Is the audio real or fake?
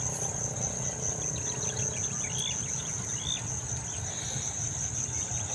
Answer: real